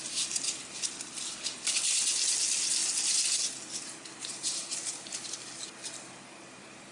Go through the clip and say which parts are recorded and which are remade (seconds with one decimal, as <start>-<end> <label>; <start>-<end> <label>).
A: 0.0-2.8 remade; 2.8-3.8 recorded; 3.8-5.8 remade; 5.8-6.5 recorded; 6.5-6.9 remade